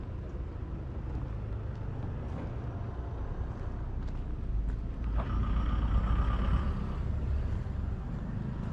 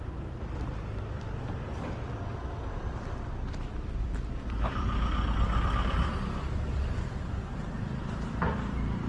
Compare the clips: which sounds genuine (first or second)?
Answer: first